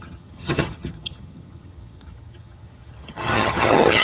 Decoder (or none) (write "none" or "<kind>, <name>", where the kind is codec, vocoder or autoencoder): vocoder, HiFi-GAN